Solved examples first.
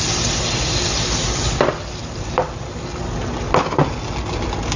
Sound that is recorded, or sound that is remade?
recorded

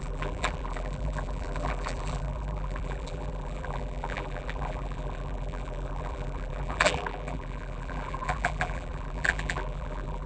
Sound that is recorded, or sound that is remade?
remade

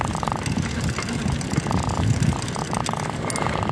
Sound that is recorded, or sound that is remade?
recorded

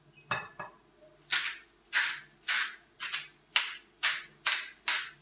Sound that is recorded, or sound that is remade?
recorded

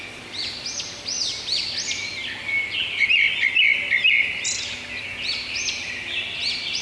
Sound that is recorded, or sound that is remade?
recorded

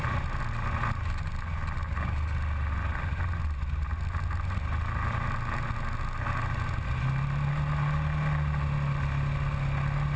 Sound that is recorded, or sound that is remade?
recorded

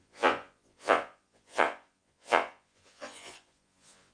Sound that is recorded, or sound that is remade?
remade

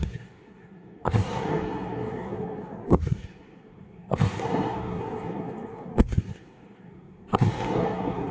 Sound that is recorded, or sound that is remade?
remade